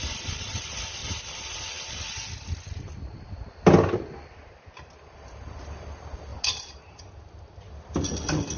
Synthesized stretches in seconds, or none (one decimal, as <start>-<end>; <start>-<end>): 6.3-7.0